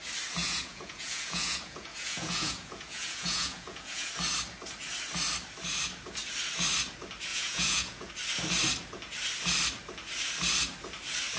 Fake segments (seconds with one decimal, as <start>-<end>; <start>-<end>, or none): 0.4-4.1; 7.3-8.1